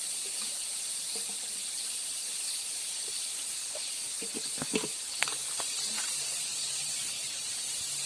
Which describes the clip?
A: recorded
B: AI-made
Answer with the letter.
B